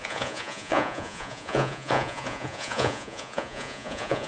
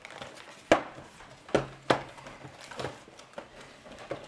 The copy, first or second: first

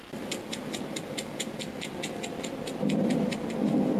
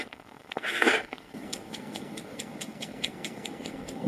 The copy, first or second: second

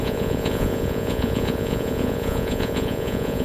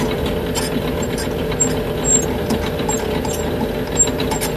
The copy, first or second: first